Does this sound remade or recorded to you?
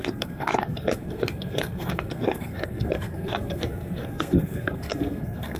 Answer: remade